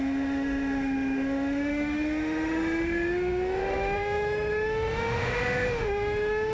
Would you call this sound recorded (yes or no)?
no